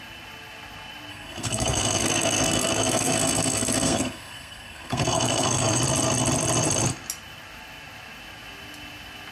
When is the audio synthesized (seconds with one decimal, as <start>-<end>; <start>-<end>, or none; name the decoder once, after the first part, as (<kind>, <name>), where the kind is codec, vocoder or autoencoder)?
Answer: 1.1-5.8 (codec, SNAC)